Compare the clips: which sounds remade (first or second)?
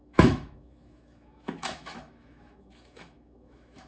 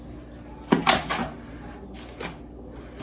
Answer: first